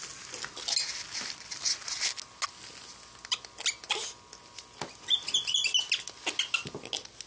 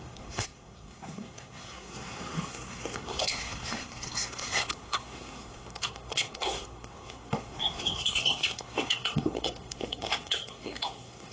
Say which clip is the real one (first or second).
first